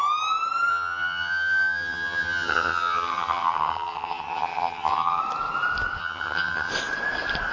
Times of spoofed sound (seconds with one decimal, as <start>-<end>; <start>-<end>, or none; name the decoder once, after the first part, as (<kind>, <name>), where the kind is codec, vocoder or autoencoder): 0.7-5.2 (vocoder, HiFi-GAN); 6.0-6.7